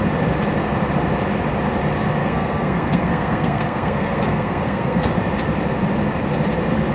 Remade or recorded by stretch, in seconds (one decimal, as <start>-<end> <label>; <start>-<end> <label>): 0.0-2.2 recorded; 2.2-5.1 remade; 5.1-6.9 recorded